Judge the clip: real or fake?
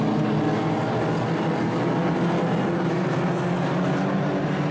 real